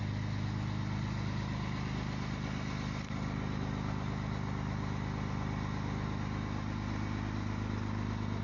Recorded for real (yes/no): yes